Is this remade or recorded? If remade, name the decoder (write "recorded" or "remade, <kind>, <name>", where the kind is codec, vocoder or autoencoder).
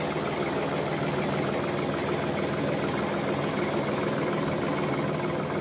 recorded